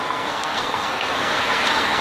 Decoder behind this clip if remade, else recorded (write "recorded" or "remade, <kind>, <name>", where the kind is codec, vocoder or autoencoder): remade, codec, SNAC